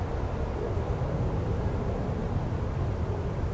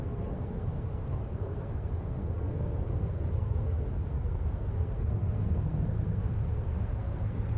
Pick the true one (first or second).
first